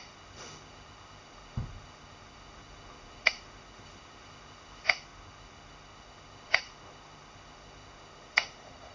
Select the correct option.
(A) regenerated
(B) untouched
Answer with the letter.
A